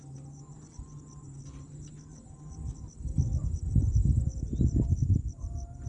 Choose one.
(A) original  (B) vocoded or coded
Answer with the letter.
A